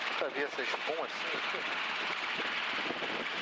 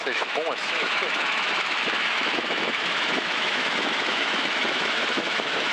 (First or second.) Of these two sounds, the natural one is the first